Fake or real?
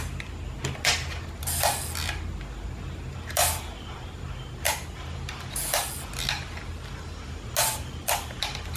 real